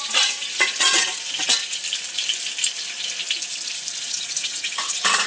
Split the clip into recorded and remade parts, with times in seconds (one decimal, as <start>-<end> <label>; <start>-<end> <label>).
0.0-1.8 remade; 1.8-4.0 recorded; 4.0-5.3 remade